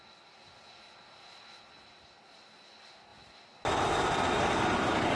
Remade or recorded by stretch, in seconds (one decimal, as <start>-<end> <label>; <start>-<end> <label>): 0.0-5.2 recorded